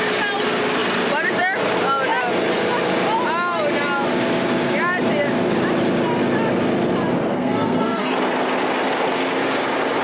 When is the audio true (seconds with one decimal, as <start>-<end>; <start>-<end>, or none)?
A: 0.0-7.3; 8.1-10.0